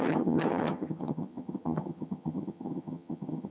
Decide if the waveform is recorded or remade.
remade